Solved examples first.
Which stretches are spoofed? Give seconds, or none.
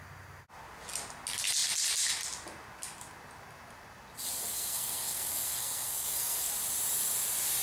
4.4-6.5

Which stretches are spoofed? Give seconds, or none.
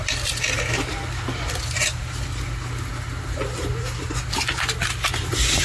none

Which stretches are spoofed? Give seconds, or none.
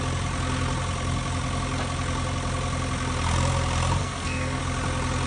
4.0-4.6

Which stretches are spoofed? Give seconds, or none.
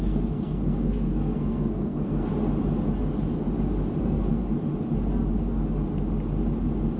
0.0-2.3; 4.0-4.4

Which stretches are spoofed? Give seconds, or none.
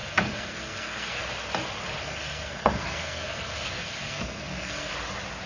0.0-1.2; 2.0-4.9